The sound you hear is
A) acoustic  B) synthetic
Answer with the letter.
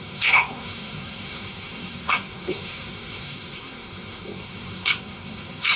B